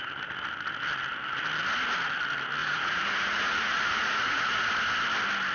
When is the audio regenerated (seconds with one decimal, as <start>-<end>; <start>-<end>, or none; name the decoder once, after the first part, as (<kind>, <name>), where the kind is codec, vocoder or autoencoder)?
2.6-4.7 (vocoder, Vocos)